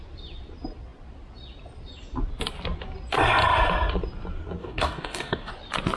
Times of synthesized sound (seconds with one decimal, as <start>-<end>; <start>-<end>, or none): 4.6-5.5